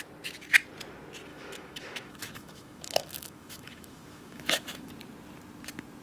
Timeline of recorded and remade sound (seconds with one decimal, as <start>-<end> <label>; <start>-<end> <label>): 0.0-1.3 recorded; 1.3-4.9 remade; 4.9-6.0 recorded